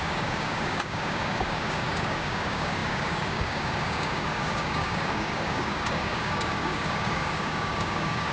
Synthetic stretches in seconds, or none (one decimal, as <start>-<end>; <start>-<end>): 0.0-8.3